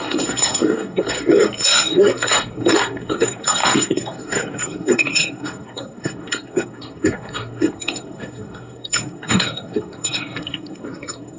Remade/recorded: remade